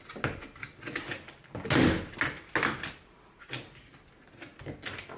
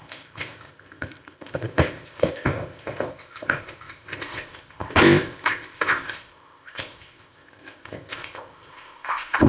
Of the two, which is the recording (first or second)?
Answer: first